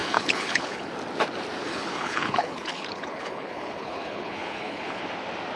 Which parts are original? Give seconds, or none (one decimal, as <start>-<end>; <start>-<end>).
0.9-1.6; 5.0-5.6